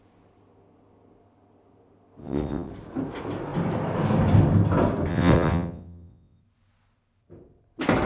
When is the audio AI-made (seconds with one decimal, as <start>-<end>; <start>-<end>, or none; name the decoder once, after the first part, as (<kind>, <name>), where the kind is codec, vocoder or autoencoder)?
2.2-2.7 (vocoder, WaveNeXt); 5.1-6.4